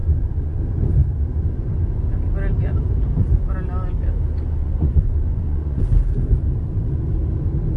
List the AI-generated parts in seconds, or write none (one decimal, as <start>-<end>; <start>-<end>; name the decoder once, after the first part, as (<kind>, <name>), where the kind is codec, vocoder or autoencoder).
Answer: 0.0-0.6 (vocoder, Vocos); 4.6-5.8